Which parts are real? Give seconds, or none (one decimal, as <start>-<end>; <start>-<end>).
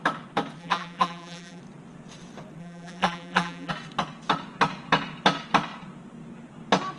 0.0-0.6; 1.6-2.6; 3.7-7.0